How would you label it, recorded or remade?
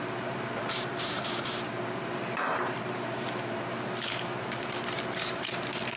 remade